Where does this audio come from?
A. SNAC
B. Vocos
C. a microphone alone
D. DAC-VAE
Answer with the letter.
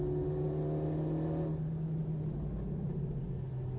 C